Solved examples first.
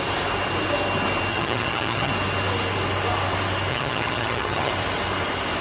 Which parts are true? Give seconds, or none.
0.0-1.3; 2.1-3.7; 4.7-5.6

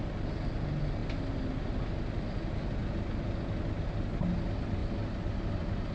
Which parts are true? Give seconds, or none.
0.0-5.9

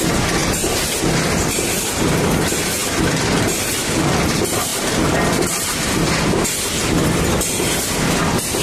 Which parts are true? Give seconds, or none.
0.0-8.6